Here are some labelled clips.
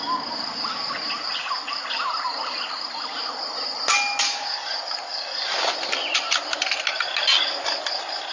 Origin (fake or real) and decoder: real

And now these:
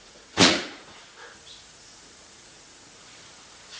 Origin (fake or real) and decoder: fake, vocoder, Vocos